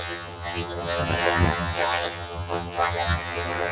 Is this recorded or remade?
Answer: remade